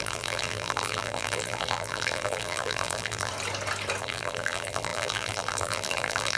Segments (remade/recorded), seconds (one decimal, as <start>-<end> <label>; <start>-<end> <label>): 0.0-3.3 remade; 3.3-4.0 recorded; 4.0-6.4 remade